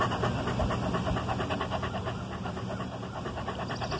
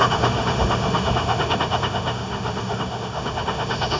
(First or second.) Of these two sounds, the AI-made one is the second